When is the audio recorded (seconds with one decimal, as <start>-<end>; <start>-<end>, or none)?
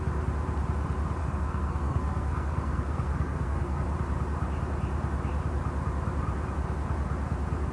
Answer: 0.0-1.2; 3.8-7.7